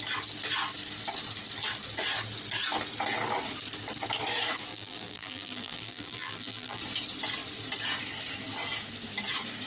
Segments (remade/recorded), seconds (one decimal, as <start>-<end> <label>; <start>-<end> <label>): 0.0-4.7 recorded; 4.7-6.8 remade; 6.8-9.7 recorded